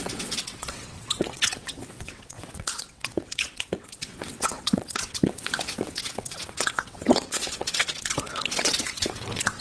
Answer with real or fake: fake